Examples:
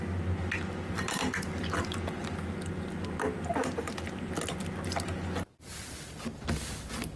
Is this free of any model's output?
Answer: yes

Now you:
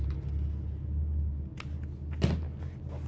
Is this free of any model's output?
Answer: yes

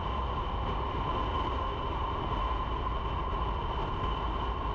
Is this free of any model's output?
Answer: yes